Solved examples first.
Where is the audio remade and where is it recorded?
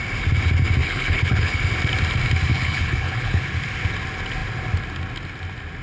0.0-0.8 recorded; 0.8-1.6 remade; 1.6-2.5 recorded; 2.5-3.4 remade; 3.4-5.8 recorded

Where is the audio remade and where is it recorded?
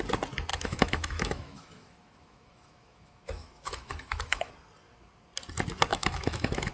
0.0-0.5 recorded; 0.5-4.5 remade; 4.5-5.9 recorded; 5.9-6.7 remade